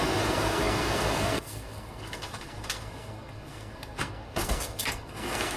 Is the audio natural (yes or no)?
no